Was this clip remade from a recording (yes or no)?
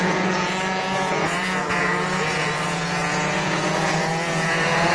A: yes